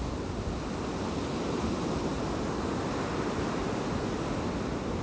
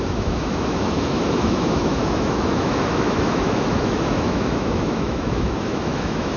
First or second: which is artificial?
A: second